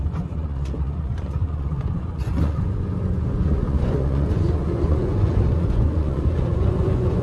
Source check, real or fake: fake